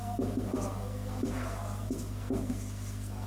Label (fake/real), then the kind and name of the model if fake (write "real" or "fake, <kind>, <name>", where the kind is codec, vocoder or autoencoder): fake, codec, SNAC